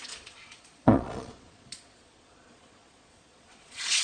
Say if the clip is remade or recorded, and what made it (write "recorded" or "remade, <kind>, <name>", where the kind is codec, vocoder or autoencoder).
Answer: remade, vocoder, Vocos